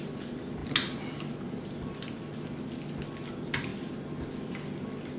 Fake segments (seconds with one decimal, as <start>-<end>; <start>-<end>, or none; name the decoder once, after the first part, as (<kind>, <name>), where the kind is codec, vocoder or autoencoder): none